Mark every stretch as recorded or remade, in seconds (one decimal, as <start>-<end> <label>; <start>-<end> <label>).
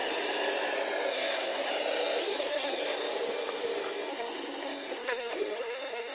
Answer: 0.0-1.1 recorded; 1.1-1.7 remade; 1.7-2.2 recorded; 2.2-2.8 remade; 2.8-4.1 recorded; 4.1-6.1 remade